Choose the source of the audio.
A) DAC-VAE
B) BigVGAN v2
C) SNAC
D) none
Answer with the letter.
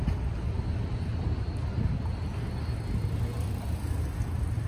D